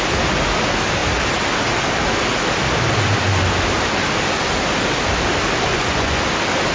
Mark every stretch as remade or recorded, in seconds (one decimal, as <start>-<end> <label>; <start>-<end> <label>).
0.0-5.7 recorded; 5.7-6.2 remade; 6.2-6.7 recorded